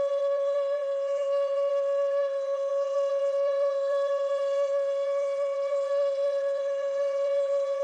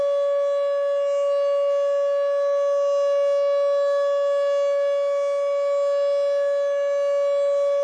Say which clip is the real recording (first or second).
second